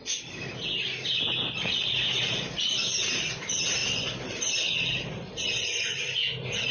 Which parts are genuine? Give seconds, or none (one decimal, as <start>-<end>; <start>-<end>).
0.0-6.7